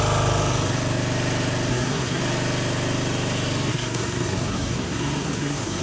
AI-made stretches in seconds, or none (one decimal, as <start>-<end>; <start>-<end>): 1.7-2.2; 3.7-5.8